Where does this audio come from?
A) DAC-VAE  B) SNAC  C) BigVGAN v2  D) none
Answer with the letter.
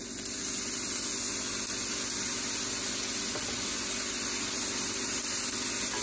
D